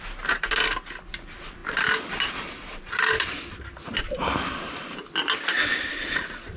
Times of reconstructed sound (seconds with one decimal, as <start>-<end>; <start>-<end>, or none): none